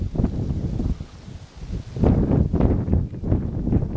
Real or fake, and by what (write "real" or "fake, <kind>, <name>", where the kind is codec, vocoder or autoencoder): real